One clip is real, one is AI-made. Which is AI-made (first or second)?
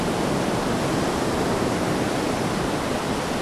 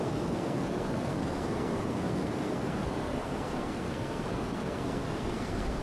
second